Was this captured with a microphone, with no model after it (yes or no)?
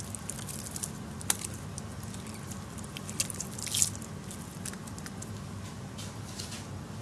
yes